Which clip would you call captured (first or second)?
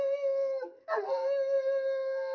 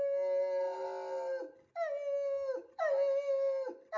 second